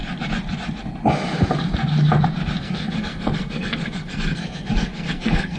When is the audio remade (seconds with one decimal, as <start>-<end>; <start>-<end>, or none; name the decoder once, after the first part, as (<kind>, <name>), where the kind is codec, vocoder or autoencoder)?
2.6-5.6 (codec, SNAC)